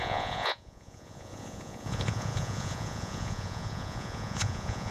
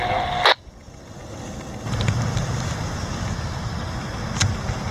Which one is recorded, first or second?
second